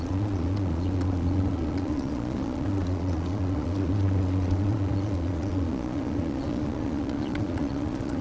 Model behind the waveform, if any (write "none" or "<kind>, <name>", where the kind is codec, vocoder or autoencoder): vocoder, Vocos